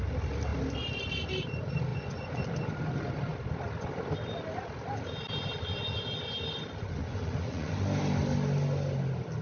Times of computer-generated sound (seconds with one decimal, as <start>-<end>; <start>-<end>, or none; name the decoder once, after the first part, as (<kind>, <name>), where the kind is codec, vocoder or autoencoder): 1.9-2.4 (vocoder, Vocos); 7.0-7.7